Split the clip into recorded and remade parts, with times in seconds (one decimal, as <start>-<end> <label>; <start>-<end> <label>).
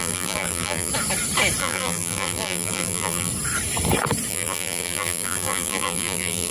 0.0-0.9 remade; 0.9-1.6 recorded; 1.6-3.3 remade; 3.3-4.3 recorded; 4.3-6.5 remade